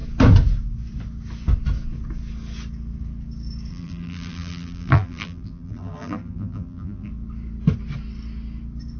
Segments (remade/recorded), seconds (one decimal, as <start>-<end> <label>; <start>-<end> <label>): 0.0-3.7 recorded; 3.7-7.1 remade; 7.1-9.0 recorded